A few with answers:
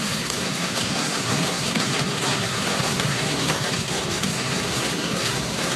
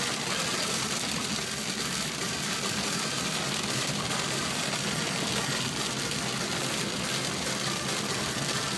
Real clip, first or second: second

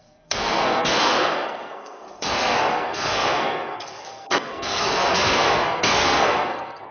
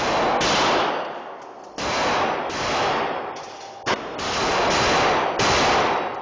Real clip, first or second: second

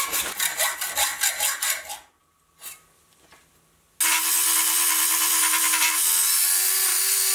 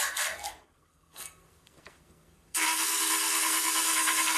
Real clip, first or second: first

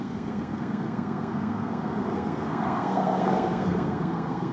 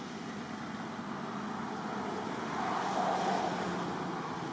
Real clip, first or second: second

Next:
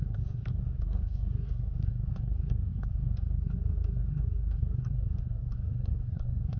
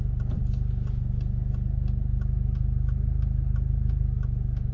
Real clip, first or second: second